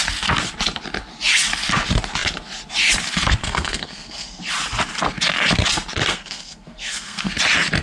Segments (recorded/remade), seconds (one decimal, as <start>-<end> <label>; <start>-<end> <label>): 0.0-3.4 recorded; 3.4-4.4 remade; 4.4-6.1 recorded; 6.1-7.3 remade; 7.3-7.8 recorded